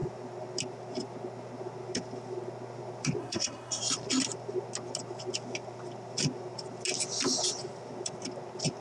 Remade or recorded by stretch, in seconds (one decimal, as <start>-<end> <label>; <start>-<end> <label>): 0.0-3.2 recorded; 3.2-3.8 remade; 3.8-8.8 recorded